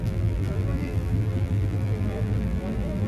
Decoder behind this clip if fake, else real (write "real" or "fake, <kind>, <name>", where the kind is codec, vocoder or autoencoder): fake, vocoder, BigVGAN v2